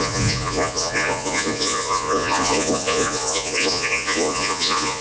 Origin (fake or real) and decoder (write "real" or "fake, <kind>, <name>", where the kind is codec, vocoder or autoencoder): fake, vocoder, Vocos